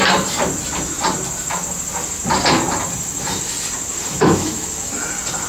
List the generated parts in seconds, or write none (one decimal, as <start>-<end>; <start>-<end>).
4.1-4.9